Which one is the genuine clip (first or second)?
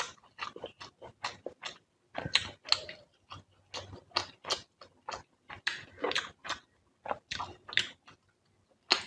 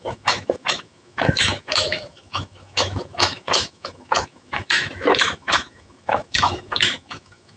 first